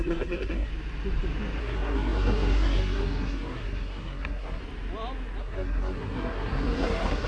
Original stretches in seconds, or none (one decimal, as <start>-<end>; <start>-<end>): 0.7-1.6; 4.6-5.4